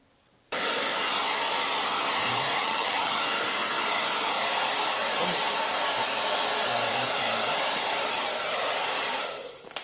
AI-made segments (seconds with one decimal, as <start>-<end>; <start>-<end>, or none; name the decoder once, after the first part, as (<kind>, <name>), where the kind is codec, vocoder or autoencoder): 2.6-3.2 (vocoder, HiFi-GAN)